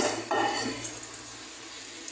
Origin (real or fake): real